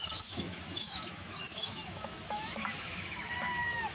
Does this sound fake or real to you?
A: fake